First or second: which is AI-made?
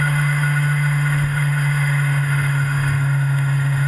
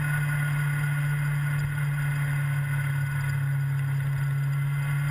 first